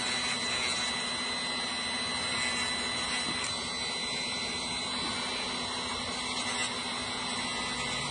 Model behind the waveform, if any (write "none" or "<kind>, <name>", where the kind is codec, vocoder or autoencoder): none